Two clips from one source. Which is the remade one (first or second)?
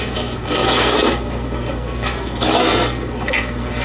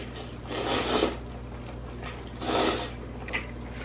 first